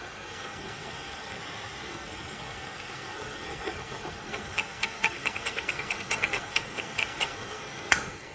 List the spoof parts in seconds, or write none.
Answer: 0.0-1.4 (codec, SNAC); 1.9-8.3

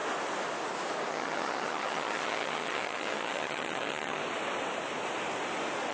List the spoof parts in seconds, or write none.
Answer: 1.1-4.2 (vocoder, HiFi-GAN)

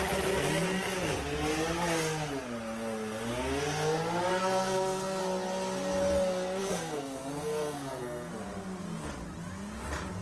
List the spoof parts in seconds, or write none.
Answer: 4.3-5.2 (codec, SNAC); 6.6-8.3

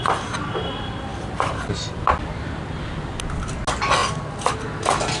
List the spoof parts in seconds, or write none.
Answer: 1.1-2.5 (vocoder, BigVGAN v2)

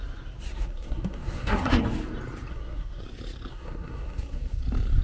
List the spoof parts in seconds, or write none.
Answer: 0.5-1.8 (codec, SNAC); 2.5-3.0; 3.5-4.6